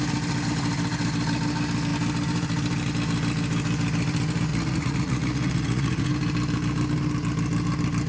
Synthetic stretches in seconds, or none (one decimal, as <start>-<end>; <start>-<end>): 4.5-6.1